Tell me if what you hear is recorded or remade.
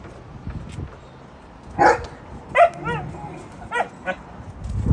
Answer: recorded